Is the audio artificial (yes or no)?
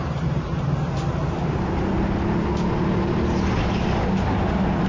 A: no